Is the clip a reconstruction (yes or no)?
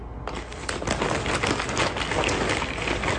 no